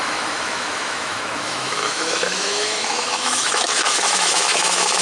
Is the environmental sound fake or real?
fake